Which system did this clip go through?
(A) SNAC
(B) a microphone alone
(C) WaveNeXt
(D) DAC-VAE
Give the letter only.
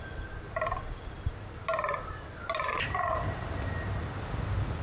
B